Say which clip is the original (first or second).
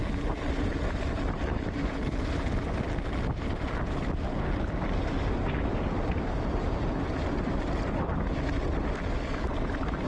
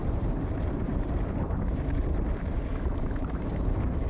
first